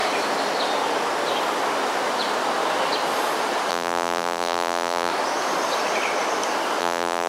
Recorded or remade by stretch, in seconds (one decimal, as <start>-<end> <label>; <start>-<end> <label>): 0.0-3.7 recorded; 3.7-5.1 remade; 5.1-6.8 recorded; 6.8-7.3 remade